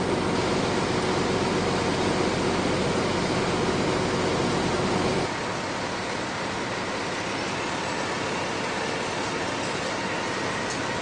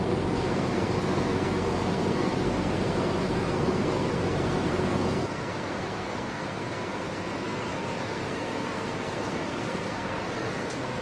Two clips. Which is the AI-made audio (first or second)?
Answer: second